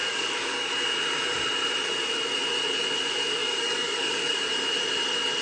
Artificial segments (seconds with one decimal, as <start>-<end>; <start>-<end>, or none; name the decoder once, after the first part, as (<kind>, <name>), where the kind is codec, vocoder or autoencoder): 0.0-0.7 (codec, DAC); 3.4-4.4